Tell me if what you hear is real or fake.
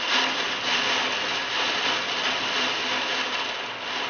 real